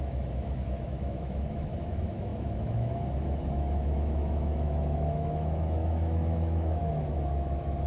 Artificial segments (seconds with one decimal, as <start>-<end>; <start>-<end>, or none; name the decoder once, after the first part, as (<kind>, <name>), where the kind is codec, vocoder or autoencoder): 0.0-7.9 (autoencoder, DAC-VAE)